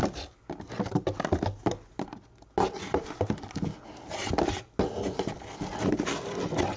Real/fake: real